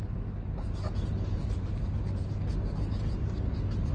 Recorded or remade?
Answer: recorded